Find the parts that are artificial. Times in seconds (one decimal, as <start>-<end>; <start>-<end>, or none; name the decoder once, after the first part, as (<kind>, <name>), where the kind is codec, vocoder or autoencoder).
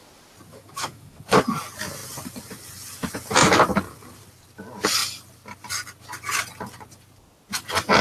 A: 0.5-1.2 (autoencoder, DAC-VAE)